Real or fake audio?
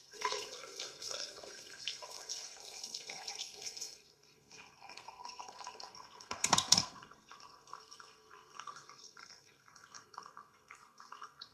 fake